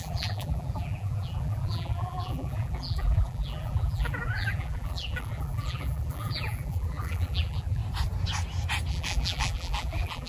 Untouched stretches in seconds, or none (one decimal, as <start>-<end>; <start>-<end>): 7.8-8.9